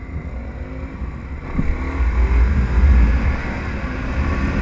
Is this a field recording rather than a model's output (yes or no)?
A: yes